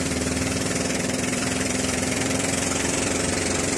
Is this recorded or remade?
remade